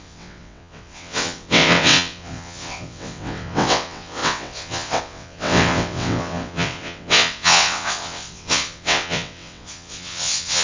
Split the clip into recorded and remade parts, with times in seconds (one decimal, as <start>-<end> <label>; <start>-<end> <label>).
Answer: 0.0-10.6 remade